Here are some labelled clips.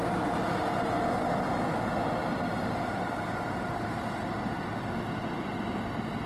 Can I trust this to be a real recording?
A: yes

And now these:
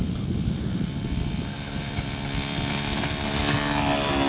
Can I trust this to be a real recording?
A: yes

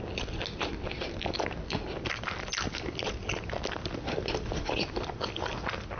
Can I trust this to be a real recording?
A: yes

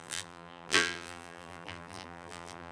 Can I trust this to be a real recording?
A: no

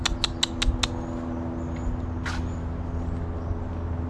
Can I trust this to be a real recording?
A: yes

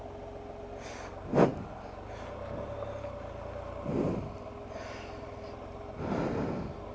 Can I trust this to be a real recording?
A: yes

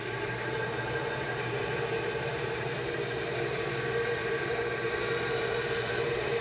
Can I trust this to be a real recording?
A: no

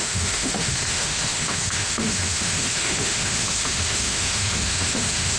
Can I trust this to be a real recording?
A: no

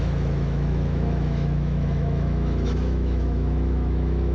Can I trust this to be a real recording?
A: no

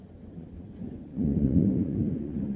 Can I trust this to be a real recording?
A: no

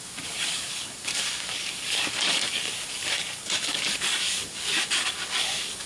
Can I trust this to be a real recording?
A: no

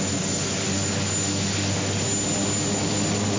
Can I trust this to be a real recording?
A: yes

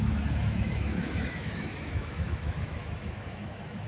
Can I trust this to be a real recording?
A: no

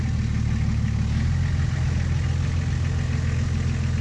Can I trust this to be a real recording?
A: yes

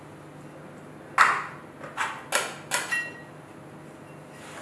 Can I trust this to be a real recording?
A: yes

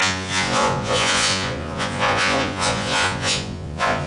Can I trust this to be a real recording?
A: no